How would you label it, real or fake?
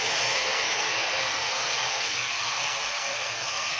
fake